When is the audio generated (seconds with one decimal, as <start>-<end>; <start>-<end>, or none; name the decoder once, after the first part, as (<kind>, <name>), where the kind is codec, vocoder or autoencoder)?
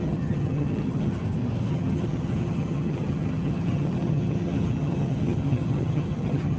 0.0-1.2 (vocoder, HiFi-GAN); 1.7-6.6